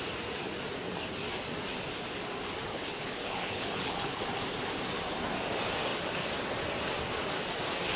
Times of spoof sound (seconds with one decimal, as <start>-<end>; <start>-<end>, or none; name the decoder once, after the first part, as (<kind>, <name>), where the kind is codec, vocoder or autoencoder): 2.7-4.2 (codec, HILCodec)